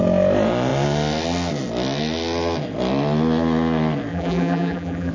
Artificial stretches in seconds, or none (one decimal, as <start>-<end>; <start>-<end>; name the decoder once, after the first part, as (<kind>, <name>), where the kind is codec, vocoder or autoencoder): 4.1-5.1 (vocoder, BigVGAN v2)